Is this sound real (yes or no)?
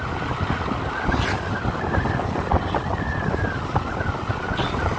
yes